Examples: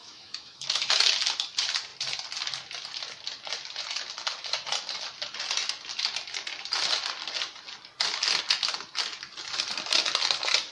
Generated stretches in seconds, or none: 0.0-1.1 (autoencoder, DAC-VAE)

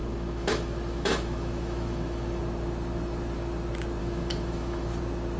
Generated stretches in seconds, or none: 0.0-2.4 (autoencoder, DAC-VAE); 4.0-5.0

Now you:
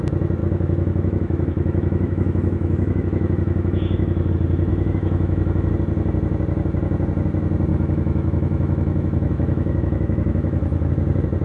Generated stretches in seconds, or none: 0.4-4.3 (autoencoder, DAC-VAE); 4.7-5.7; 7.7-10.9

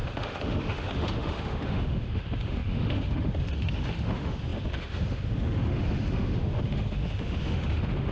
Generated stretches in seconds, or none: 0.0-8.1 (autoencoder, DAC-VAE)

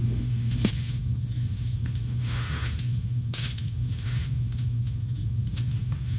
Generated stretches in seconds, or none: 0.0-6.2 (autoencoder, DAC-VAE)

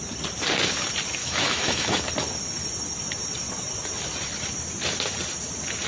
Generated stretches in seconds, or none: 1.2-2.1 (autoencoder, DAC-VAE)